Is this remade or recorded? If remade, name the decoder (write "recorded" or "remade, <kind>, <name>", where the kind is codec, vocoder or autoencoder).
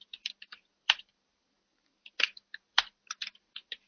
remade, vocoder, BigVGAN v2